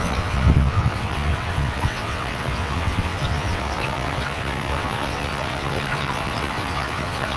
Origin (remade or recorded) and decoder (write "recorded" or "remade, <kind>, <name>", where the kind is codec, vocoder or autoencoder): remade, vocoder, WaveNeXt